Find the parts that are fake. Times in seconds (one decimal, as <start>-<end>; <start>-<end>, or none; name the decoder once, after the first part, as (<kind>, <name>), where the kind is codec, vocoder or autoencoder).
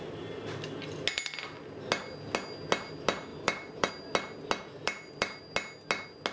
3.3-3.9 (vocoder, BigVGAN v2); 4.8-5.4